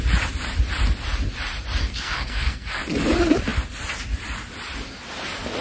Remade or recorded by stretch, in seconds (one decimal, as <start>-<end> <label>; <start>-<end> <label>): 0.0-1.8 recorded; 1.8-2.8 remade; 2.8-5.6 recorded